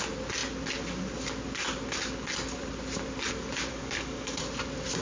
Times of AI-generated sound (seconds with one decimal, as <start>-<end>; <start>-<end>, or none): 3.7-4.4